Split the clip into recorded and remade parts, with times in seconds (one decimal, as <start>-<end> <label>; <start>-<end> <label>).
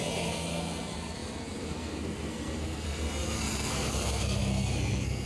0.0-5.3 remade